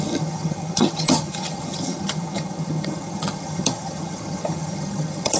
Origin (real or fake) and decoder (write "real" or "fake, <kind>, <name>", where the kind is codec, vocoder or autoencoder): fake, vocoder, HiFi-GAN